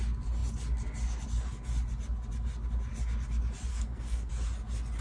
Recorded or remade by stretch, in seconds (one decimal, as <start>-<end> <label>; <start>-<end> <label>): 0.0-3.7 recorded; 3.7-4.3 remade; 4.3-5.0 recorded